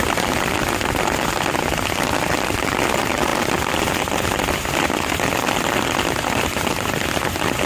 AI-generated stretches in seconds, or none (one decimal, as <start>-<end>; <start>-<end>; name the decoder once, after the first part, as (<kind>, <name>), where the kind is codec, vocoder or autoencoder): none